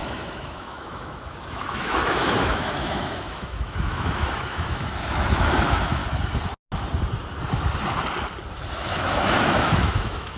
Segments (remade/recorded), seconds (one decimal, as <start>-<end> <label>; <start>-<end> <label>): 0.0-6.0 remade; 6.0-8.7 recorded; 8.7-10.4 remade